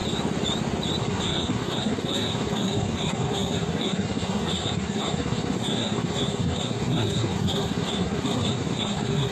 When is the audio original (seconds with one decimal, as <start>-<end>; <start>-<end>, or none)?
0.0-1.0